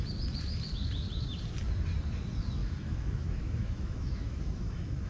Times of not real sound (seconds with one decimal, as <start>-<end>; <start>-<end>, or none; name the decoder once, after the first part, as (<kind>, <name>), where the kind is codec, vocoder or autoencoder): 2.6-5.1 (autoencoder, DAC-VAE)